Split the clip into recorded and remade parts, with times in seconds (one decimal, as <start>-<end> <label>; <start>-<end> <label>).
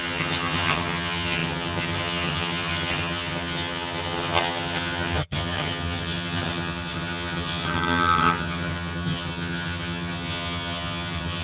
0.0-11.4 remade